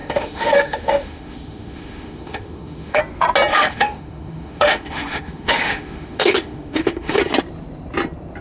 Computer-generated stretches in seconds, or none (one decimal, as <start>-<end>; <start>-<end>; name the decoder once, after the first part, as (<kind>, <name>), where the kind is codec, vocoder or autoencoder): 0.0-3.0 (autoencoder, DAC-VAE); 3.5-7.2